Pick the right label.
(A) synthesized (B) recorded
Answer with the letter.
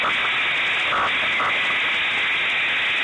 B